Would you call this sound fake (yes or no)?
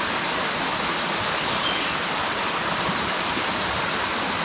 no